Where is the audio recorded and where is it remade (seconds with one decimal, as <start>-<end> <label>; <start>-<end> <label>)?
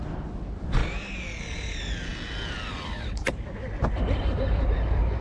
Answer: 0.0-5.2 recorded